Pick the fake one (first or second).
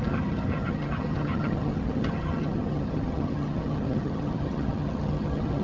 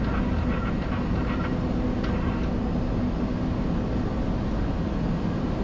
first